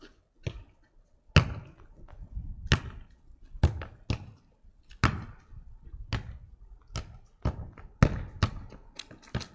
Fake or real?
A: real